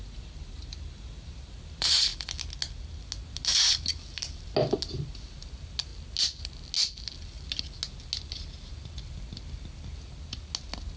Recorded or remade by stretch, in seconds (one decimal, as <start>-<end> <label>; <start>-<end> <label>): 0.0-11.0 recorded